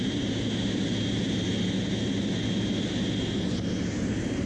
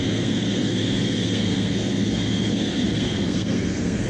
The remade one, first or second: second